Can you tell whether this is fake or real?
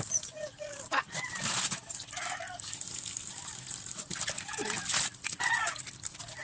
real